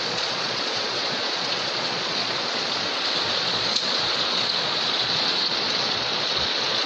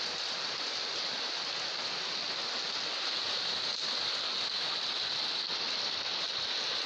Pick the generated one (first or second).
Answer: first